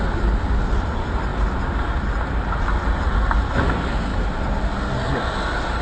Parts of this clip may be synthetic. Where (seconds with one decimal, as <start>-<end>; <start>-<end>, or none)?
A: none